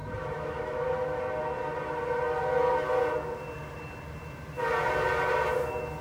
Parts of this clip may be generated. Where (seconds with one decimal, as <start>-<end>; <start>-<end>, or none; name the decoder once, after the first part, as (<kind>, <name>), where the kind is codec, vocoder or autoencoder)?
0.0-1.2 (autoencoder, DAC-VAE)